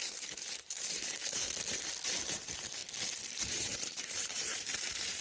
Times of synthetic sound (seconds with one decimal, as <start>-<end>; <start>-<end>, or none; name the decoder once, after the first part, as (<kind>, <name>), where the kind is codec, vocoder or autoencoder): 0.0-1.4 (vocoder, BigVGAN v2); 2.2-2.8; 3.4-5.2